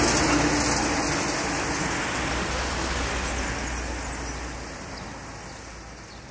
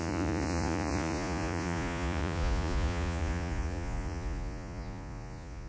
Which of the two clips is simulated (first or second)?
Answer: second